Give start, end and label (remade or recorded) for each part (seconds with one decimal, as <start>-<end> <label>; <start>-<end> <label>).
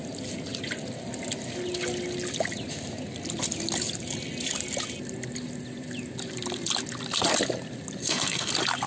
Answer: 0.0-8.0 recorded; 8.0-8.5 remade; 8.5-8.9 recorded